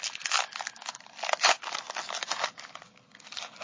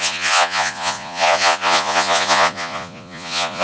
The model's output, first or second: second